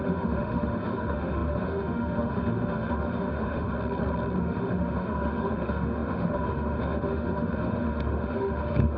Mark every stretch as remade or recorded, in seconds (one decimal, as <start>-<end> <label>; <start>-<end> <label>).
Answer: 0.0-3.7 remade; 3.7-4.4 recorded; 4.4-9.0 remade